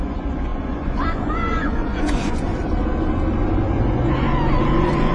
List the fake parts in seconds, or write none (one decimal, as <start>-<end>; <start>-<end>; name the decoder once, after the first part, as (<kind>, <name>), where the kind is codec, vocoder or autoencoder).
0.0-2.5 (vocoder, Vocos); 3.5-5.1

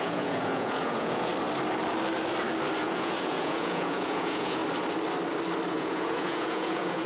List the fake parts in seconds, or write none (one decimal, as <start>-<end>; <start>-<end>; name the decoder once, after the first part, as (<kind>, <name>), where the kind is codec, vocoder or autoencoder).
0.0-1.3 (vocoder, Vocos); 2.8-4.6; 5.7-7.1

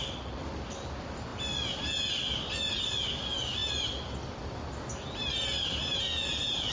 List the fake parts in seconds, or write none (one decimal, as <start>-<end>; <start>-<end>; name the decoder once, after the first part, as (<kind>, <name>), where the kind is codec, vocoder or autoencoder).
5.8-6.7 (vocoder, Vocos)

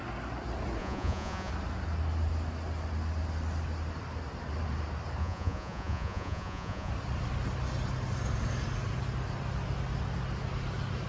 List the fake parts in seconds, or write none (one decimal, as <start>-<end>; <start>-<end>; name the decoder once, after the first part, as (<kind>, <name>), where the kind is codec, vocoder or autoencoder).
0.8-1.5 (vocoder, Vocos); 5.2-6.9

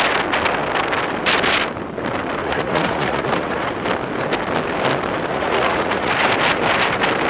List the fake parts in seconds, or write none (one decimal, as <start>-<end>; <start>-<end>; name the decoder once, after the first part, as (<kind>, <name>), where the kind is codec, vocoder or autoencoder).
2.4-3.7 (vocoder, Vocos); 5.3-6.1

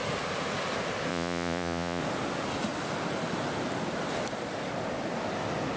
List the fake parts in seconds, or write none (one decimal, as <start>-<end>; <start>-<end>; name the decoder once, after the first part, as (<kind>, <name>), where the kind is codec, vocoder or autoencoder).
1.1-2.0 (vocoder, Vocos)